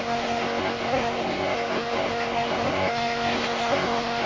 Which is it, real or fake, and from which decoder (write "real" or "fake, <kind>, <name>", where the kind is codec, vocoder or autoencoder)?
fake, codec, SNAC